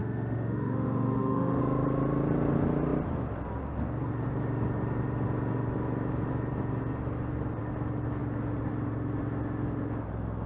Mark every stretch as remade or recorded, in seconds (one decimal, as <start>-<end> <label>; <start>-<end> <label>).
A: 0.0-1.6 remade; 1.6-10.5 recorded